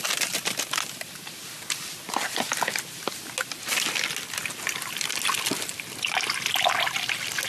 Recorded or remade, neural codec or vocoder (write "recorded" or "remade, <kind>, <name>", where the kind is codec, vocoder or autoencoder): recorded